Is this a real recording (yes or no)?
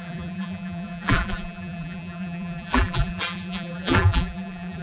no